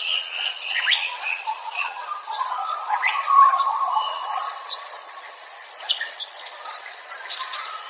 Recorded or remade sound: remade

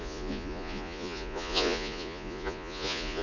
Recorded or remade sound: remade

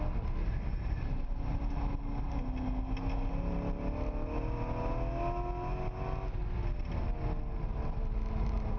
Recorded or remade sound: recorded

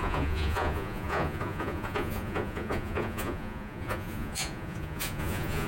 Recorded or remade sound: remade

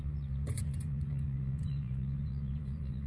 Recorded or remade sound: remade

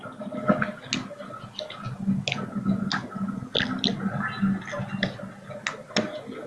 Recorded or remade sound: recorded